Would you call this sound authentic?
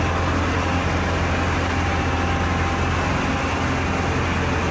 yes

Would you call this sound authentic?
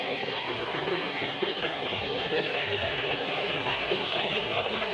no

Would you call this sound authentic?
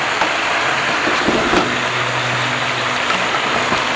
yes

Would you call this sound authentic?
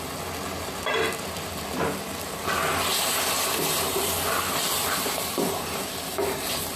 yes